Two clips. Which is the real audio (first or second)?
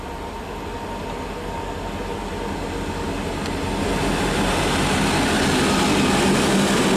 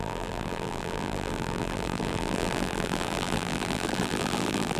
first